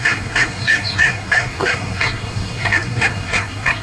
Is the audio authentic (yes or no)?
no